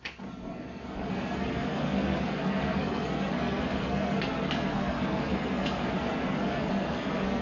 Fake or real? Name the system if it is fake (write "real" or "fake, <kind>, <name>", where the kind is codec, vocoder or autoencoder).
fake, codec, SNAC